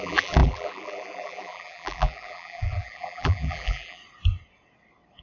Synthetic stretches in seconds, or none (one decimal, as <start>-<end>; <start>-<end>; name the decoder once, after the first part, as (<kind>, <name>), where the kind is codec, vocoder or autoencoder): 0.0-4.0 (vocoder, BigVGAN v2)